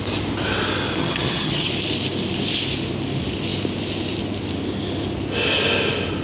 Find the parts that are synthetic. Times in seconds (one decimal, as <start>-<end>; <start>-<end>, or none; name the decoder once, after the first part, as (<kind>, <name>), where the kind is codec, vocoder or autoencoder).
1.0-1.7 (vocoder, HiFi-GAN)